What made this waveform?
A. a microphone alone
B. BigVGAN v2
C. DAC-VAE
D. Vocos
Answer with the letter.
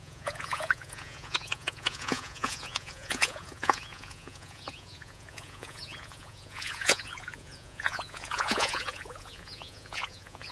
D